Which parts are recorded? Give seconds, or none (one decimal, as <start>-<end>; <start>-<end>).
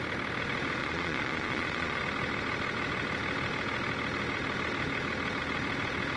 0.0-0.8; 2.0-6.2